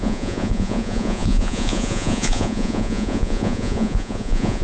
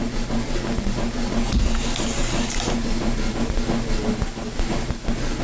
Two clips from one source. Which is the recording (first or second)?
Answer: second